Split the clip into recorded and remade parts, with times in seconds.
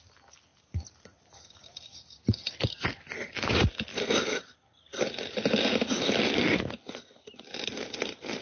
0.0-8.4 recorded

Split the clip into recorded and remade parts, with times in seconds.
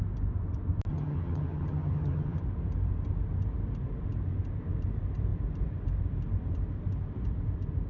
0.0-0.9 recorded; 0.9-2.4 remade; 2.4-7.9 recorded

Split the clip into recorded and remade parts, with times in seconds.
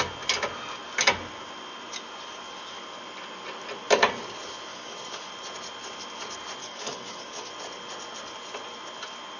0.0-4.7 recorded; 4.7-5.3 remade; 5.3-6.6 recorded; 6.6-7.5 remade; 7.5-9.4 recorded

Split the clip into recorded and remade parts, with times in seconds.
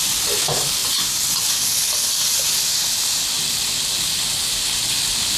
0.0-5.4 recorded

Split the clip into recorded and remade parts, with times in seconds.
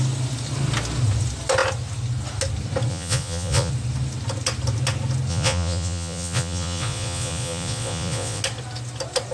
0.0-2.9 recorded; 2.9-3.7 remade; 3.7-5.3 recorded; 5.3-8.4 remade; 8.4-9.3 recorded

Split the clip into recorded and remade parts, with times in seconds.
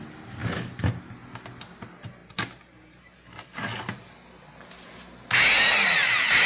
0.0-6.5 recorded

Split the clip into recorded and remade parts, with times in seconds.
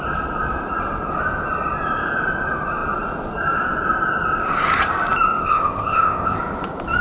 0.0-5.4 recorded; 5.4-6.4 remade; 6.4-7.0 recorded